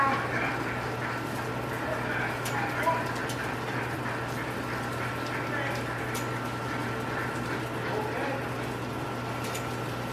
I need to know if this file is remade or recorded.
recorded